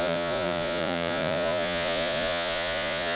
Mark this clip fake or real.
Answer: fake